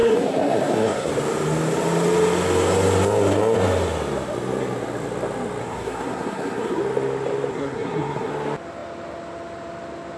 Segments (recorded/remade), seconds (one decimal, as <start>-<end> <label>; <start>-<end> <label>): 0.0-1.1 remade; 1.1-5.6 recorded; 5.6-6.8 remade; 6.8-7.5 recorded; 7.5-8.3 remade; 8.3-10.2 recorded